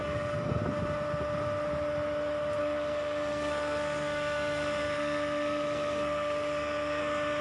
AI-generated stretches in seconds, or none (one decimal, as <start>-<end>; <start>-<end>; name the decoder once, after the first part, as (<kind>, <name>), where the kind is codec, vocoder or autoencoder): 0.0-0.6 (codec, SNAC); 2.6-7.0